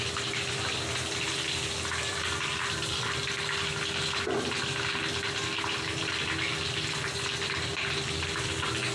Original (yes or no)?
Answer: yes